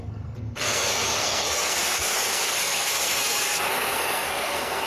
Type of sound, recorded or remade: remade